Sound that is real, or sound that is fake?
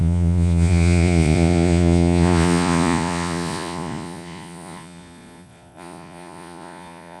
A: fake